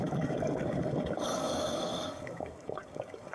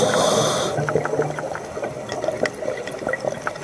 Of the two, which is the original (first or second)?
second